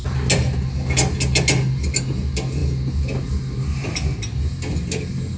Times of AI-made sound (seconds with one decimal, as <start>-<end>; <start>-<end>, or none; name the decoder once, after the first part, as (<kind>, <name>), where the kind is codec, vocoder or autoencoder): none